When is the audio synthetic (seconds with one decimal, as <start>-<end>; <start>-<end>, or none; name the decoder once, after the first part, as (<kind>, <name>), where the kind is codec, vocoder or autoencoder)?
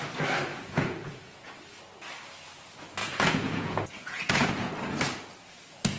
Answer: 0.5-1.5 (vocoder, Vocos); 3.0-4.7